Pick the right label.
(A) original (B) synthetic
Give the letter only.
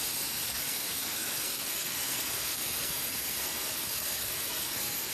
B